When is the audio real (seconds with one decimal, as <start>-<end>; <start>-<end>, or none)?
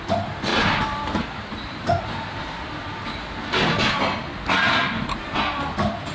0.0-0.5; 4.0-6.1